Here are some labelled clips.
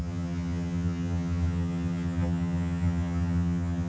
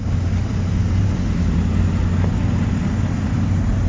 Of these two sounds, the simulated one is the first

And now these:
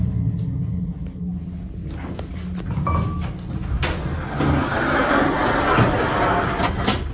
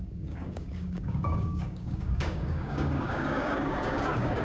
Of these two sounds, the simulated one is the second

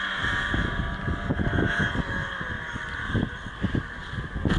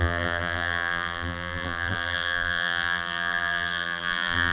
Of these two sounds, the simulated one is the second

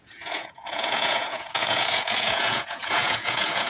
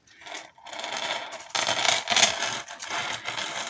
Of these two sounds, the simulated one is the first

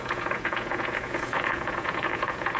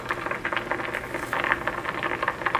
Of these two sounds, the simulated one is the first